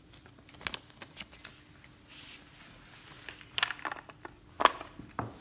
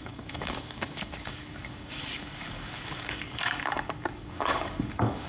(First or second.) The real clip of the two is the first